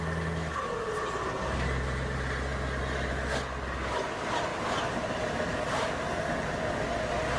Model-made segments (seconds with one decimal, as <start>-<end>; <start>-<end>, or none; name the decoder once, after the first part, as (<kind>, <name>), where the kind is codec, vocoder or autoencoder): none